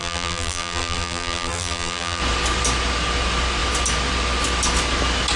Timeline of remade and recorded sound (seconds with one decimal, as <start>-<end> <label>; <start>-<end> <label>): 0.0-2.2 remade; 2.2-5.4 recorded